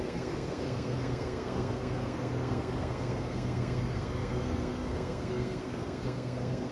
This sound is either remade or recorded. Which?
remade